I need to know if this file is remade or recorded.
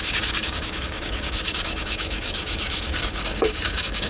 remade